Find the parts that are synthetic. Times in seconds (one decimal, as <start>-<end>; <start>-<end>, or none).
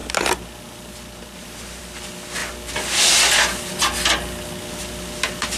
none